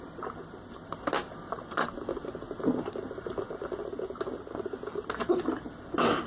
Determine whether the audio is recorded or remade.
recorded